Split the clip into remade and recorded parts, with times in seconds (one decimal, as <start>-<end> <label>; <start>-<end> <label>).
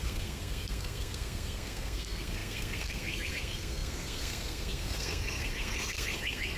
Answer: 0.0-6.6 remade